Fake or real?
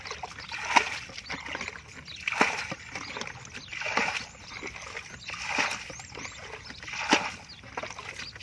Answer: real